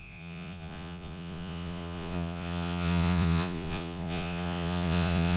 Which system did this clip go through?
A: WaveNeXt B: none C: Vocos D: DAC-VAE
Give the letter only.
C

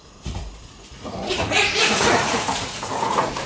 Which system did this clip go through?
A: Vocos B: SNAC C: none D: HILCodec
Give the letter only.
A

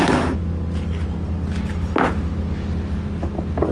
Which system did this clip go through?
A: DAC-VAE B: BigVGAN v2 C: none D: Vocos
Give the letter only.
C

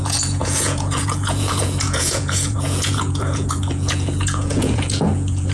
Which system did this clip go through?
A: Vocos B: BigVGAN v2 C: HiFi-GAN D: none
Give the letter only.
A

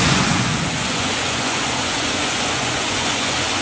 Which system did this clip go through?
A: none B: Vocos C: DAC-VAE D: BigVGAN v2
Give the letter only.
B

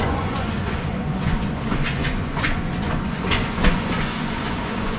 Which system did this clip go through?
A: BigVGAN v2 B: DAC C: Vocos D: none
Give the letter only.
C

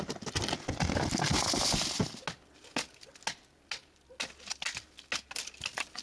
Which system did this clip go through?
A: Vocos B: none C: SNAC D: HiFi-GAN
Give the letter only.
B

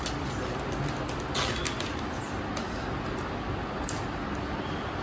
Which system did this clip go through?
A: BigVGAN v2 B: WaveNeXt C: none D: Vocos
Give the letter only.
C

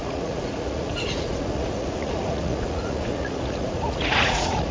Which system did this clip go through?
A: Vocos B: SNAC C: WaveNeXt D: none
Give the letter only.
A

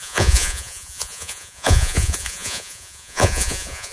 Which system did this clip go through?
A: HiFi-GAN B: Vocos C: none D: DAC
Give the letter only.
B